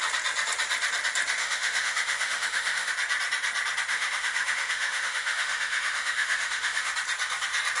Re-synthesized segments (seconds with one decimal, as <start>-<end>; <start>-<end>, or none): 1.4-2.9; 3.9-6.9